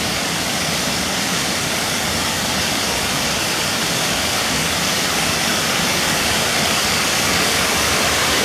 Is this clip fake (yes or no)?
yes